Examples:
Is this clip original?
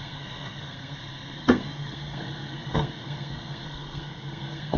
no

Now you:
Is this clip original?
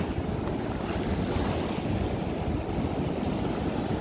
yes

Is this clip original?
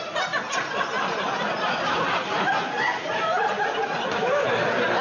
yes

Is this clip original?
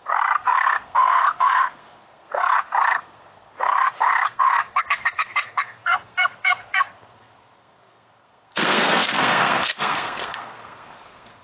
no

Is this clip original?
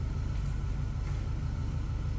yes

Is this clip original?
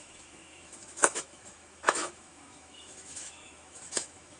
no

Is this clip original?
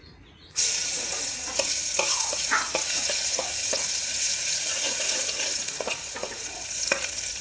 no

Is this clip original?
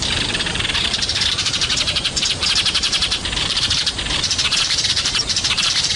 no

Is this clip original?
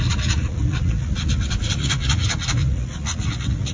no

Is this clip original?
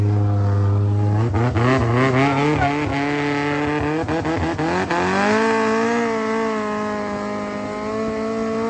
yes